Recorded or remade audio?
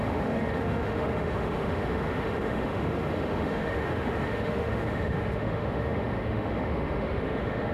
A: remade